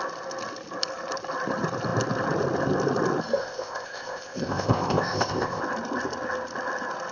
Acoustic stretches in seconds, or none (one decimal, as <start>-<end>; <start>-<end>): 0.0-3.4; 5.6-7.1